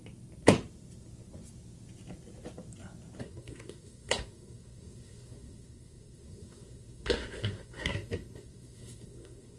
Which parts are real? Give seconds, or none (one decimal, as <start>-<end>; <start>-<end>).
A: 0.0-3.2